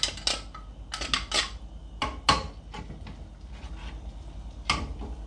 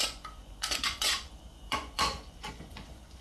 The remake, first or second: second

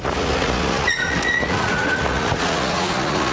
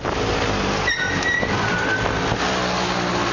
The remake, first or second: first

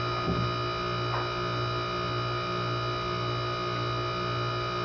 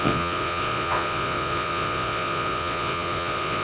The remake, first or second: second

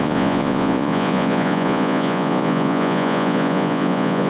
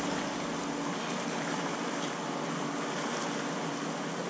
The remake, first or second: first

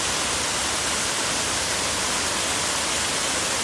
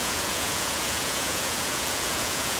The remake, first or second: second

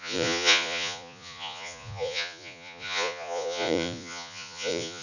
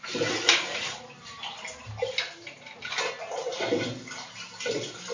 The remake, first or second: first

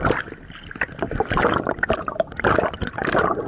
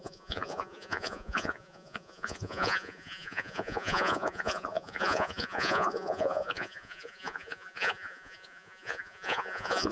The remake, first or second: second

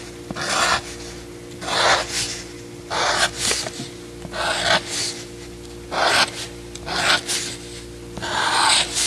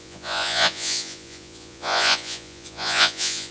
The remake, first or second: second